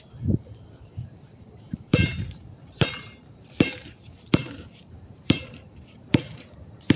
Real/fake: fake